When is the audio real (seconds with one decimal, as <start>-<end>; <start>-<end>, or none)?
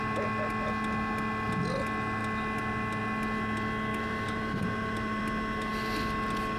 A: 0.0-3.9; 5.2-6.6